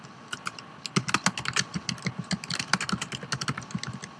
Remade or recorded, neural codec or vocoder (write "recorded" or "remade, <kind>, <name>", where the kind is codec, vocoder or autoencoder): recorded